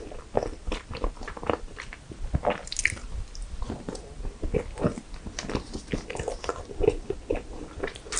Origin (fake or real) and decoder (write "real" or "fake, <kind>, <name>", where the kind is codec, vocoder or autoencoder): real